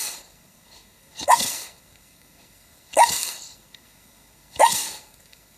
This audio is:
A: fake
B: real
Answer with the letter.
A